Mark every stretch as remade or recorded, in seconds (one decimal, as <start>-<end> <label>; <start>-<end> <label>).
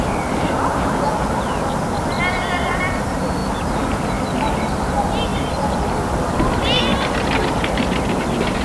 0.0-1.1 recorded; 1.1-1.7 remade; 1.7-5.3 recorded; 5.3-6.1 remade; 6.1-8.6 recorded